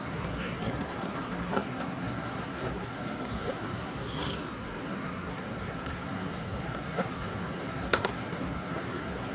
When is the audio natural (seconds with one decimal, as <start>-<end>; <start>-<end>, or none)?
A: none